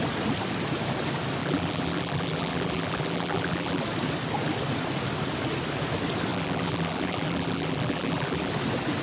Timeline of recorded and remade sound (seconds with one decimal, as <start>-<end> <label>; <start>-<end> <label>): 0.0-1.4 recorded; 1.4-3.8 remade; 3.8-6.3 recorded; 6.3-8.5 remade; 8.5-9.0 recorded